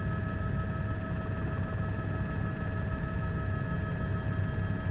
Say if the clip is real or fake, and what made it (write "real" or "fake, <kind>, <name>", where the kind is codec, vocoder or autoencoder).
real